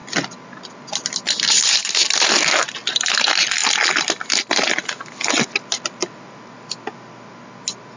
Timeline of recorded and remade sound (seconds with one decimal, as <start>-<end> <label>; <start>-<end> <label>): 0.0-8.0 recorded